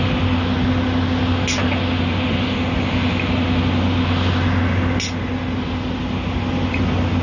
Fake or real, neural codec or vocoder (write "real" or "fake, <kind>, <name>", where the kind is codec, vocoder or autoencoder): real